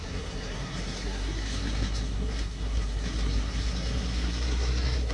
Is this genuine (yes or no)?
no